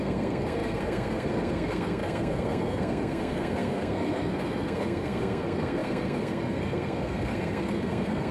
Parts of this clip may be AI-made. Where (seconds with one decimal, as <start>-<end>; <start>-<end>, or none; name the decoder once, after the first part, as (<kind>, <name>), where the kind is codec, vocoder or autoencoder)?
0.0-8.3 (codec, SNAC)